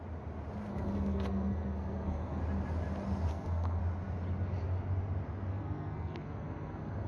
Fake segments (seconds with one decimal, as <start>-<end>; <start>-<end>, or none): 0.7-2.4; 3.3-3.8; 5.5-7.1

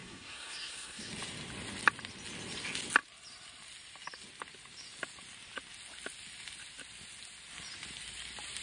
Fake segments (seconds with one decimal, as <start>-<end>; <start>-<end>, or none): 0.0-1.1

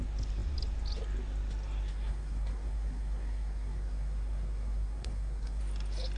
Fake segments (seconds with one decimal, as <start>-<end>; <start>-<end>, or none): 1.9-5.6

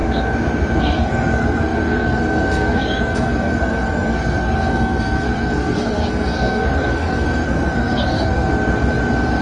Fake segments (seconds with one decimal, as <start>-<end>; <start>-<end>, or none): 0.8-8.5

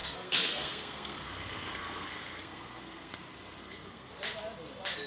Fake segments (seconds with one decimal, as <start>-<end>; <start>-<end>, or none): 0.0-3.1; 3.6-4.1

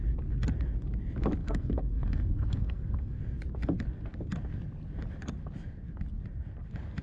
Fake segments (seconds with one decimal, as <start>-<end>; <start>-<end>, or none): 1.4-3.2